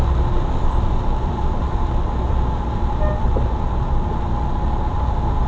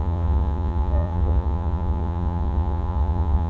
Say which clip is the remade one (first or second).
second